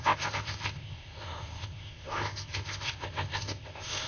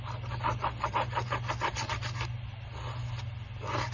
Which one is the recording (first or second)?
second